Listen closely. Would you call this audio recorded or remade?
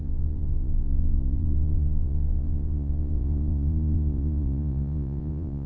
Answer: remade